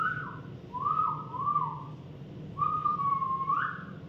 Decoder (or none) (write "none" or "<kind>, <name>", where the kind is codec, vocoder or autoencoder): none